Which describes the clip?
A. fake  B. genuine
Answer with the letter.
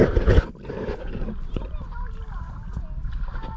B